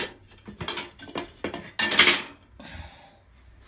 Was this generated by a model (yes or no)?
no